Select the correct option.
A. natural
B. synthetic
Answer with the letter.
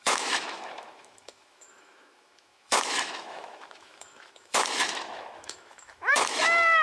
B